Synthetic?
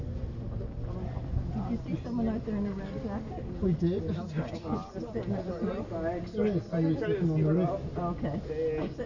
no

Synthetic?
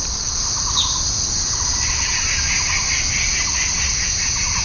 no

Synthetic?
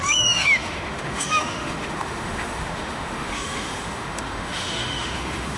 yes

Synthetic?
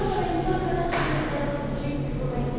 no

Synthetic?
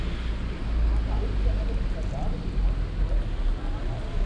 no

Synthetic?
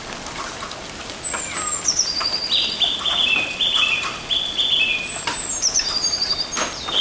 no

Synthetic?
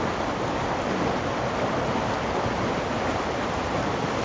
no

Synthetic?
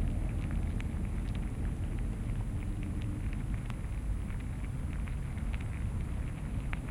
no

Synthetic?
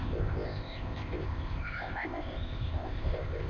yes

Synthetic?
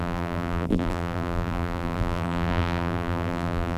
yes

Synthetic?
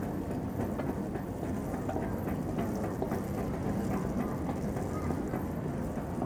no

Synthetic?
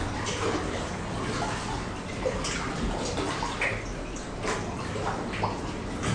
no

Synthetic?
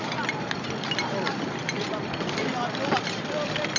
no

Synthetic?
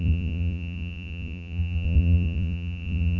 yes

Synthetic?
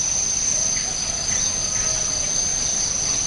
no